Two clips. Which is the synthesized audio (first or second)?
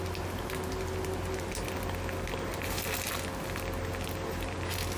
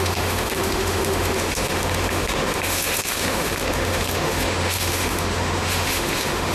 second